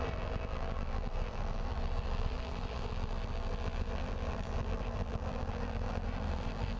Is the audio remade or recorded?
remade